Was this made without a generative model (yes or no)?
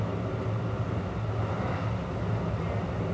yes